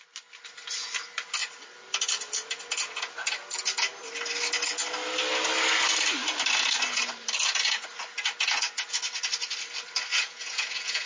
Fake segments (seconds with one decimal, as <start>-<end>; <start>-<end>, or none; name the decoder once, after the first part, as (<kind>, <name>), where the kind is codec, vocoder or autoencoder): 10.1-11.1 (vocoder, Vocos)